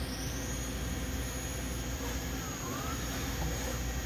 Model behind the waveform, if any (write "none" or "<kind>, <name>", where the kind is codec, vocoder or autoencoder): none